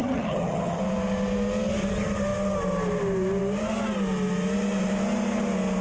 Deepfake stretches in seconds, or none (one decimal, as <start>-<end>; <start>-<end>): 0.0-0.8